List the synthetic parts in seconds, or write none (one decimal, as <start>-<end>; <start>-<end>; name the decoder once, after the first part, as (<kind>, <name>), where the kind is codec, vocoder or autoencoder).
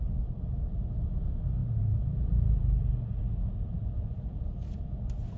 1.6-4.8 (vocoder, BigVGAN v2)